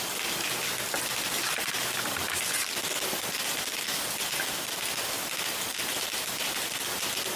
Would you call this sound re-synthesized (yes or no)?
no